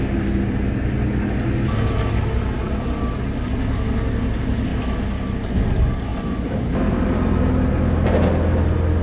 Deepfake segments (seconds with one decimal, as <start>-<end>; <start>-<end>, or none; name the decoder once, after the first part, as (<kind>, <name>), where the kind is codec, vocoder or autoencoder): none